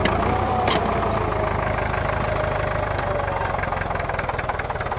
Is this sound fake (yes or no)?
no